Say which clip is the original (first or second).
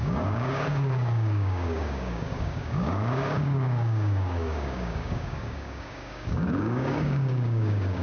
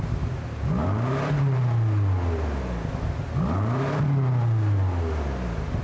second